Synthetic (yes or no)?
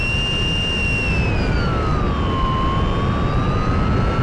no